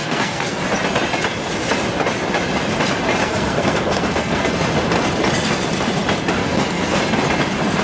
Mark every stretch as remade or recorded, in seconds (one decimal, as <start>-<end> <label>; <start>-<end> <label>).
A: 0.0-0.6 remade; 0.6-3.2 recorded; 3.2-4.5 remade; 4.5-6.4 recorded; 6.4-7.0 remade; 7.0-7.8 recorded